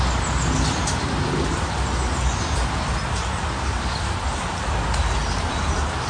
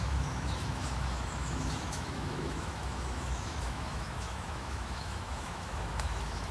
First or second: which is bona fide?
first